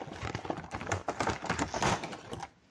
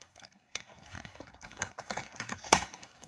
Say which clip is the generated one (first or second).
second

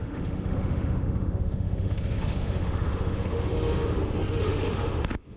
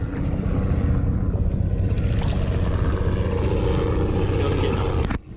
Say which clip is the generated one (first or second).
first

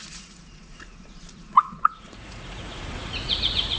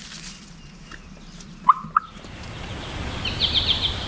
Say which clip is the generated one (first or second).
first